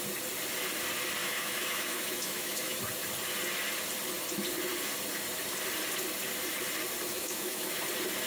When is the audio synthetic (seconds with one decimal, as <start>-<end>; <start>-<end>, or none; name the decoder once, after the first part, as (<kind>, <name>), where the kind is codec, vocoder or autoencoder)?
1.2-2.8 (autoencoder, DAC-VAE); 7.1-7.8